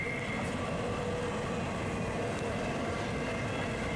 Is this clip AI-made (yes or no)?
no